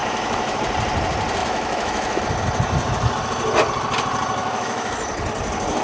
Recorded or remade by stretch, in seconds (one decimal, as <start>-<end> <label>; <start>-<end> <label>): 0.0-0.6 remade; 0.6-1.4 recorded; 1.4-2.2 remade; 2.2-4.4 recorded; 4.4-4.9 remade; 4.9-5.8 recorded